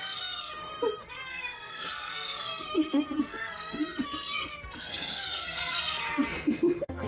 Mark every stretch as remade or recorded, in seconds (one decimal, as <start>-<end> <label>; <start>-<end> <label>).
0.0-0.5 remade; 0.5-1.1 recorded; 1.1-7.1 remade

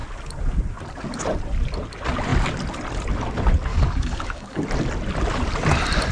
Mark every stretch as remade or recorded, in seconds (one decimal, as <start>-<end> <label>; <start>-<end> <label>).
0.0-3.7 recorded; 3.7-4.6 remade; 4.6-6.1 recorded

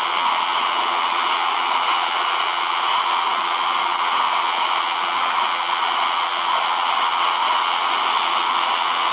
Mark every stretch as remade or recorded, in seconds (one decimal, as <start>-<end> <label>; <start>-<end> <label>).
0.0-9.1 remade

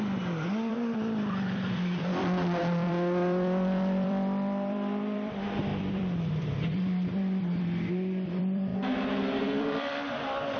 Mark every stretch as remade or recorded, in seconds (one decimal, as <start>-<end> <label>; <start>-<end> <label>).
0.0-10.6 remade

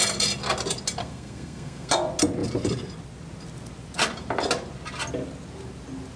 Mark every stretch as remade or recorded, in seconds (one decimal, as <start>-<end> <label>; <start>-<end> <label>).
0.0-1.0 recorded; 1.0-1.9 remade; 1.9-6.2 recorded